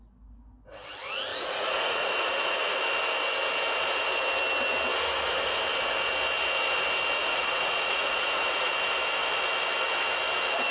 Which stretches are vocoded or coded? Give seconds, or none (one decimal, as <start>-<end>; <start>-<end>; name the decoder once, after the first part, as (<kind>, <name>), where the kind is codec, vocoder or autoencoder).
1.3-2.8 (vocoder, Vocos); 7.2-8.7